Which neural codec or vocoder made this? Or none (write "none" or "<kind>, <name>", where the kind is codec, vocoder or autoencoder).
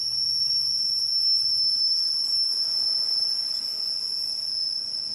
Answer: none